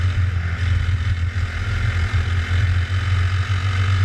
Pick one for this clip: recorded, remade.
recorded